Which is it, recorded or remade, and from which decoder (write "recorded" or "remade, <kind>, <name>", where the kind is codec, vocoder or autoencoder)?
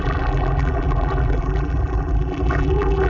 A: remade, vocoder, BigVGAN v2